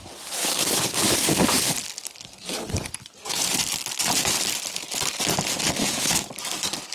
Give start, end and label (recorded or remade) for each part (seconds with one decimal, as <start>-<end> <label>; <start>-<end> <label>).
0.0-0.4 recorded; 0.4-1.1 remade; 1.1-5.8 recorded; 5.8-6.3 remade; 6.3-6.9 recorded